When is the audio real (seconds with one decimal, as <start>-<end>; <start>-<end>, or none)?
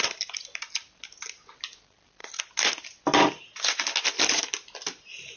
0.0-5.4